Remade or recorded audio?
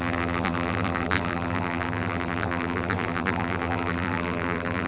remade